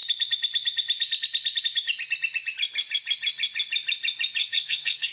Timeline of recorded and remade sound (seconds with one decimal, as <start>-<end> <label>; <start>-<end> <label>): 0.0-4.4 recorded; 4.4-5.1 remade